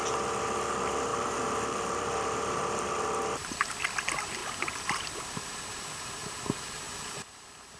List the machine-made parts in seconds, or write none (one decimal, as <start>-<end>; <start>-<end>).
1.1-2.9; 4.4-5.5